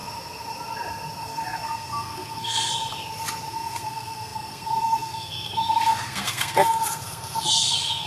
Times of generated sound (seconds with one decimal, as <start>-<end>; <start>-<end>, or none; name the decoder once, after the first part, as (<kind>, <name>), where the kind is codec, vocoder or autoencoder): 1.2-2.7 (codec, SNAC); 3.5-8.1